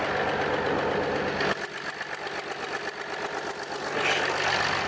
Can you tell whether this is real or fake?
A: real